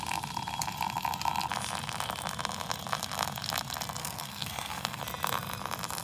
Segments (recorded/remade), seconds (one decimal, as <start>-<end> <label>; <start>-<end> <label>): 0.0-4.0 recorded; 4.0-5.0 remade; 5.0-6.0 recorded